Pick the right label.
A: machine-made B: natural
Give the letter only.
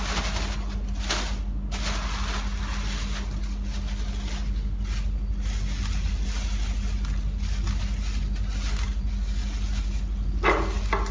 B